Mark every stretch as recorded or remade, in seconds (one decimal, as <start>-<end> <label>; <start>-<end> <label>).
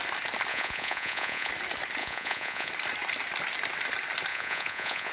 0.0-0.5 recorded; 0.5-1.5 remade; 1.5-2.0 recorded; 2.0-2.7 remade; 2.7-4.3 recorded; 4.3-5.1 remade